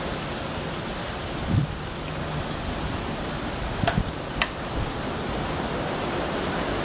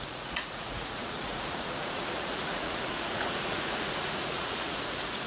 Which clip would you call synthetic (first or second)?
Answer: second